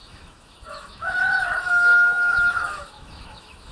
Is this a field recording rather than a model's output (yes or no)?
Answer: no